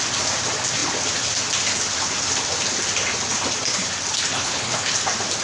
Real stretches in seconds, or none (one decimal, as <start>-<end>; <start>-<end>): 0.0-4.3; 4.9-5.4